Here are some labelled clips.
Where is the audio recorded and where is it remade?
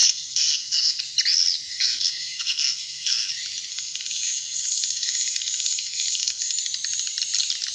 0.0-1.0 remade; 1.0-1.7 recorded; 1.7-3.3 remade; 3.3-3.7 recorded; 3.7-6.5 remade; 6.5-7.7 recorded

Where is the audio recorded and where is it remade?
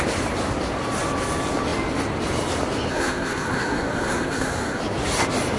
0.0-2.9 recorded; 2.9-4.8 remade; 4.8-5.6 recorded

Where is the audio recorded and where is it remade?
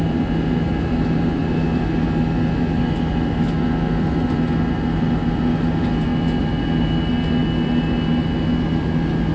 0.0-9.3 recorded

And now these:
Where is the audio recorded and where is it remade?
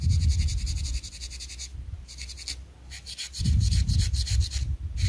0.0-5.1 recorded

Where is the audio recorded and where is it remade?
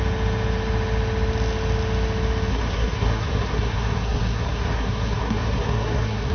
0.0-2.5 recorded; 2.5-6.3 remade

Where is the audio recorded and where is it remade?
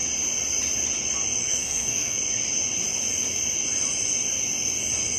0.0-1.4 recorded; 1.4-2.2 remade; 2.2-5.2 recorded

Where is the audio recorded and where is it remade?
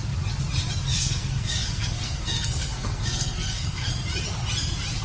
0.0-0.9 recorded; 0.9-3.9 remade; 3.9-5.0 recorded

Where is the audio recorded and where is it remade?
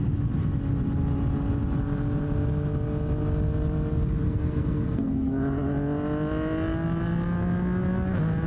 0.0-4.2 recorded; 4.2-5.3 remade; 5.3-8.5 recorded